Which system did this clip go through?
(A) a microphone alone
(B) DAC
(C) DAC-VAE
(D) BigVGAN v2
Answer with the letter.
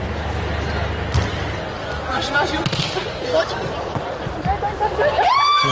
A